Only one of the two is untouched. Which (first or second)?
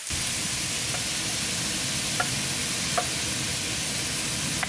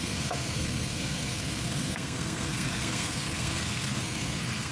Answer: first